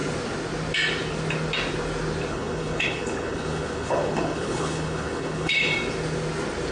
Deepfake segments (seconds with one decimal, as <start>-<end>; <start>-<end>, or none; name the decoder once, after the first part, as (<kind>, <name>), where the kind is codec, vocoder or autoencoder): 2.3-5.7 (codec, HILCodec)